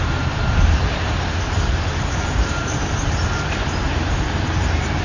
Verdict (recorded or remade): remade